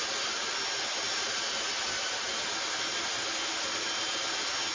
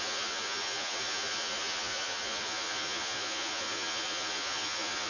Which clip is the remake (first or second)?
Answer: second